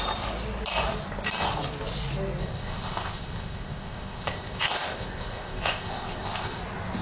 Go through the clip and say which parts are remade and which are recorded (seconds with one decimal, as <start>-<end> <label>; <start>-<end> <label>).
0.0-2.4 recorded; 2.4-6.6 remade; 6.6-7.0 recorded